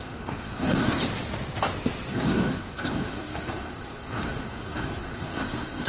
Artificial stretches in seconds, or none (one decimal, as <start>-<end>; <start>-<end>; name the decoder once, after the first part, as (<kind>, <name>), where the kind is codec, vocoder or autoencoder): 0.0-1.0 (codec, SNAC); 2.1-5.9